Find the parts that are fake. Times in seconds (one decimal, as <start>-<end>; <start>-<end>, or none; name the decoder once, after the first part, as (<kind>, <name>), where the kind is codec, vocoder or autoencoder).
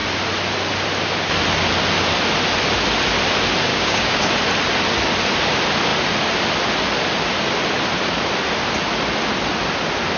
3.7-4.3 (codec, DAC)